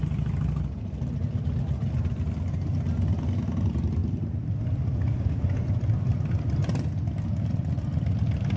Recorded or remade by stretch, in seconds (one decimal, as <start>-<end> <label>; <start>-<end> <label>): 0.0-8.6 recorded